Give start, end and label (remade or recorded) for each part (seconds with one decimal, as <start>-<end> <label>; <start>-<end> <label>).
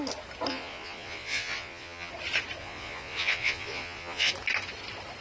0.0-0.5 recorded; 0.5-2.1 remade; 2.1-2.6 recorded; 2.6-4.3 remade; 4.3-5.2 recorded